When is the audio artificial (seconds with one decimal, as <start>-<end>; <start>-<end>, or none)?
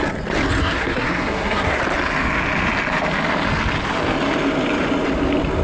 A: 0.6-1.8